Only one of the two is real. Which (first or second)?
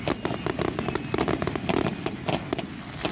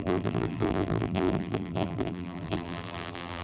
first